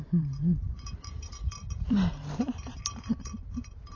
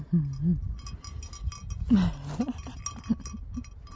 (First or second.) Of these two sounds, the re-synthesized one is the first